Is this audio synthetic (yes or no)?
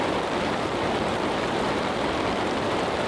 no